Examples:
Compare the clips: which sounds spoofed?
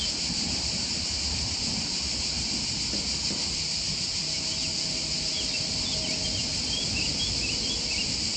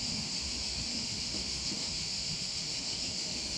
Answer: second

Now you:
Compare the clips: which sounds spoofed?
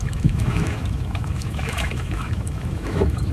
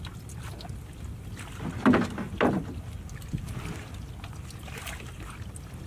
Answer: first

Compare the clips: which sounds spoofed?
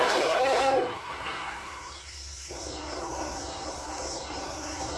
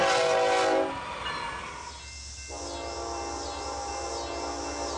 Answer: first